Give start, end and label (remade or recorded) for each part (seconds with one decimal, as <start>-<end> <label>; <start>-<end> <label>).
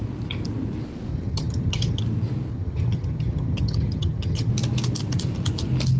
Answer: 0.0-1.1 recorded; 1.1-2.0 remade; 2.0-2.5 recorded; 2.5-4.5 remade; 4.5-6.0 recorded